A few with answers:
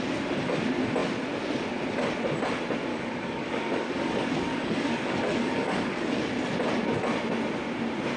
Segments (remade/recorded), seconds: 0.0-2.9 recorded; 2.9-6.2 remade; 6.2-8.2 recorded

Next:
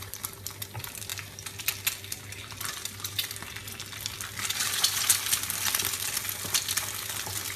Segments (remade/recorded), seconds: 0.0-7.6 recorded

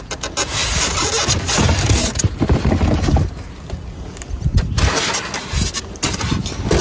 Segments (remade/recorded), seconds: 0.0-6.8 recorded

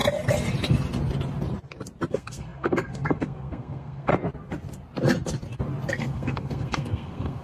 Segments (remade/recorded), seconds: 0.0-2.1 recorded; 2.1-4.1 remade; 4.1-5.9 recorded; 5.9-7.4 remade

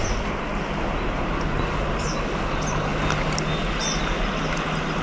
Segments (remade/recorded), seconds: 0.0-5.0 recorded